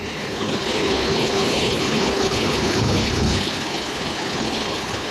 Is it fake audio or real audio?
fake